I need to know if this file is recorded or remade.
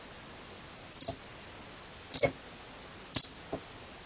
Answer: recorded